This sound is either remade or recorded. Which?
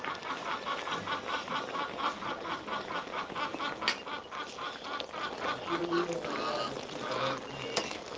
recorded